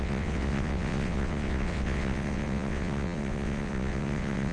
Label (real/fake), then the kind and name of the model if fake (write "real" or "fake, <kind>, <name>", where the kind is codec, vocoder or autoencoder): fake, vocoder, WaveNeXt